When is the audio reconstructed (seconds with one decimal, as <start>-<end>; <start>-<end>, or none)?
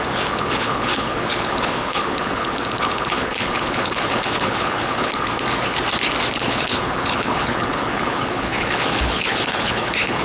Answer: 0.0-5.3; 6.3-10.2